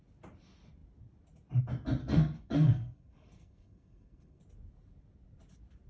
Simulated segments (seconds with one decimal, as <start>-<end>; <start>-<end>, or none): 2.0-4.4